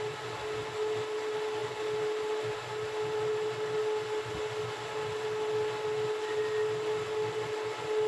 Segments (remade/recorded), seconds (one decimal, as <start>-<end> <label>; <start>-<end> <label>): 0.0-8.1 recorded